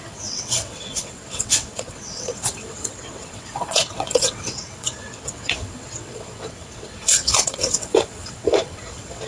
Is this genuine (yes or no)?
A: no